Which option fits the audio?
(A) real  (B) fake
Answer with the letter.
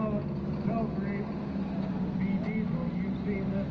A